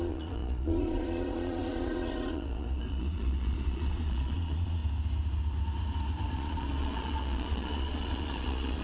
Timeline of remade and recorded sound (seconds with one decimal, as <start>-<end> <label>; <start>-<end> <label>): 0.0-4.8 remade; 4.8-6.3 recorded; 6.3-8.8 remade